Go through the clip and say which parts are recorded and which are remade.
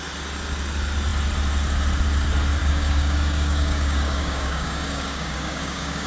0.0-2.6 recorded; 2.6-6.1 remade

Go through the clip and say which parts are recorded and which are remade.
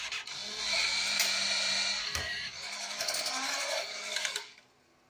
0.0-2.0 recorded; 2.0-4.6 remade; 4.6-5.1 recorded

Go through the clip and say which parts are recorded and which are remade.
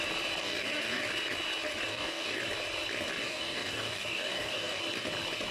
0.0-0.4 recorded; 0.4-1.0 remade; 1.0-1.9 recorded; 1.9-2.4 remade; 2.4-3.2 recorded; 3.2-4.8 remade; 4.8-5.5 recorded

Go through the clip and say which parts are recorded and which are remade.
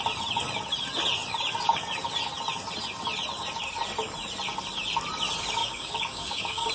0.0-5.6 recorded; 5.6-6.7 remade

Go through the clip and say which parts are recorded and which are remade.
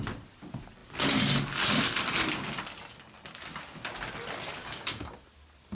0.0-4.6 recorded; 4.6-5.1 remade; 5.1-5.7 recorded